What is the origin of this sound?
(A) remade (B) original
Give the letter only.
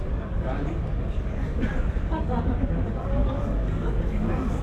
A